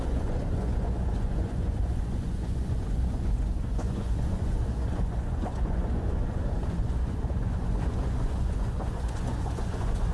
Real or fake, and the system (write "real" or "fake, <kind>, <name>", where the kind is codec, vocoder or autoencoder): fake, vocoder, Vocos